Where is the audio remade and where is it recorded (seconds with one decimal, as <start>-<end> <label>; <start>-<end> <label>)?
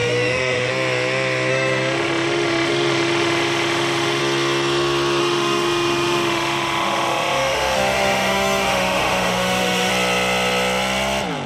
0.0-0.7 remade; 0.7-1.5 recorded; 1.5-4.2 remade; 4.2-5.2 recorded; 5.2-9.9 remade; 9.9-11.5 recorded